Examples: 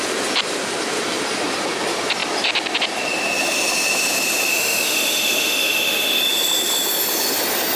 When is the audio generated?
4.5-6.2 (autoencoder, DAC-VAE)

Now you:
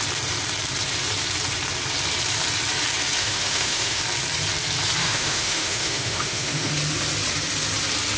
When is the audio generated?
3.2-4.0 (autoencoder, DAC-VAE); 5.0-6.7

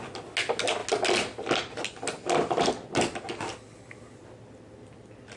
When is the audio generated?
none